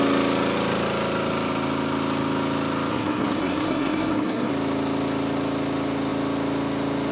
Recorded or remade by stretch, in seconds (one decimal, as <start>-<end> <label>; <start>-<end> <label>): 0.0-2.9 recorded; 2.9-4.5 remade; 4.5-7.1 recorded